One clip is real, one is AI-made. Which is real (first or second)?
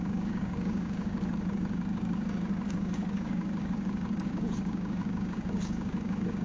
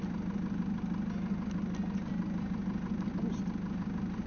second